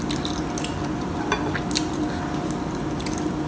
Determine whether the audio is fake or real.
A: real